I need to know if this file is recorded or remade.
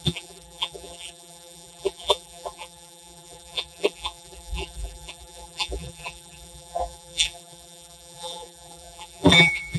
remade